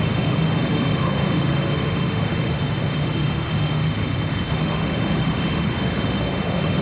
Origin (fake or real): fake